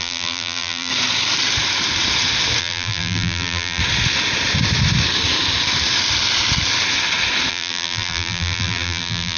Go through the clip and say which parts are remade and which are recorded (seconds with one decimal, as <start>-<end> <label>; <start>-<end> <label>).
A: 0.0-0.9 remade; 0.9-2.6 recorded; 2.6-3.8 remade; 3.8-7.5 recorded; 7.5-9.4 remade

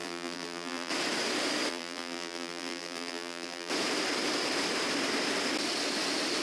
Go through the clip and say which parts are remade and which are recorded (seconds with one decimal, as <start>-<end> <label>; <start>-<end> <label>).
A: 0.0-0.9 remade; 0.9-1.7 recorded; 1.7-3.7 remade; 3.7-6.4 recorded

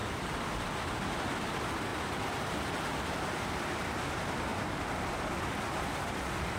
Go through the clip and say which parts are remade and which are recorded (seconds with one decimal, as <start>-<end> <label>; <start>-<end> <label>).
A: 0.0-1.3 remade; 1.3-1.9 recorded; 1.9-2.8 remade; 2.8-6.6 recorded

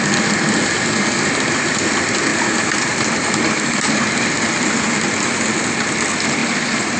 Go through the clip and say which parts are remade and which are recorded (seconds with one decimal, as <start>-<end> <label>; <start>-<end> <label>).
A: 0.0-2.3 recorded; 2.3-4.0 remade; 4.0-6.4 recorded; 6.4-7.0 remade

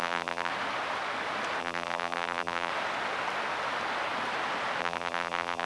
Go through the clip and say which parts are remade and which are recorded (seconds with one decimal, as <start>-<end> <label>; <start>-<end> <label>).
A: 0.0-0.5 remade; 0.5-1.6 recorded; 1.6-2.7 remade; 2.7-4.8 recorded; 4.8-5.7 remade

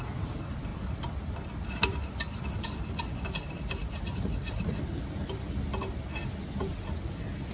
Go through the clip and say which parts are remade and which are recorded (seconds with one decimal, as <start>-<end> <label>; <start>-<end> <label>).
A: 0.0-3.8 recorded; 3.8-6.7 remade; 6.7-7.5 recorded

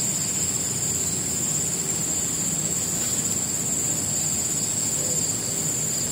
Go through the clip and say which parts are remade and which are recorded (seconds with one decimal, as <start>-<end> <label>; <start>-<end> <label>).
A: 0.0-6.1 recorded